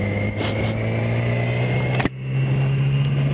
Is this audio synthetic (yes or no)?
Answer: no